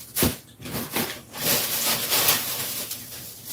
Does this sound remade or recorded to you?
recorded